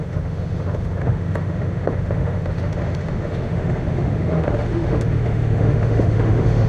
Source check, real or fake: fake